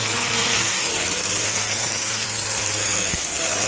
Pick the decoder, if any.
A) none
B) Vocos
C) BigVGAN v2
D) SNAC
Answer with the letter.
D